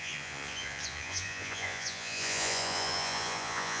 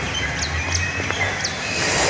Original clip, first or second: second